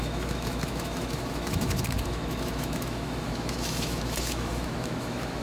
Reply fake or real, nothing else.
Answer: fake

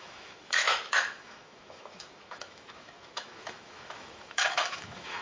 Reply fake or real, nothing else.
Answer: fake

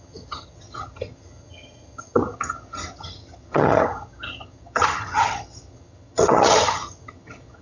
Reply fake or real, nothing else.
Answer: fake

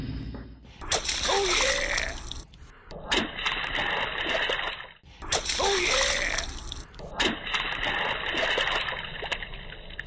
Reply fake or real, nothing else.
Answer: real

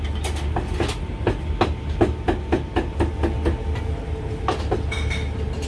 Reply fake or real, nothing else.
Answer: real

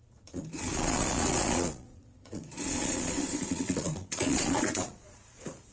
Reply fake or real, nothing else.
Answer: fake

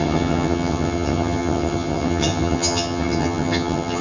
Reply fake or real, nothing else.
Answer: fake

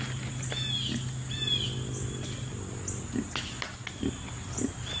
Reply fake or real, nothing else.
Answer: real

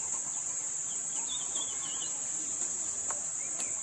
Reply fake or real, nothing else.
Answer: real